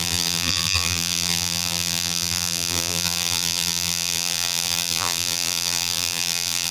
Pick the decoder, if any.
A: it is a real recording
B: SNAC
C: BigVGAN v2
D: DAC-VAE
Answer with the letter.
C